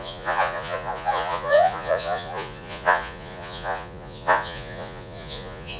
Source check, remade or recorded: remade